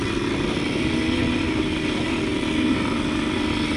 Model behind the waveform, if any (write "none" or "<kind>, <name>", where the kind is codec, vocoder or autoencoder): none